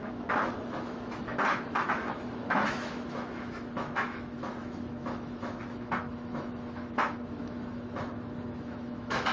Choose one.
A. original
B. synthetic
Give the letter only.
B